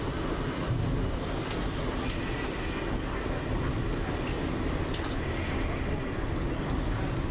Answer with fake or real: real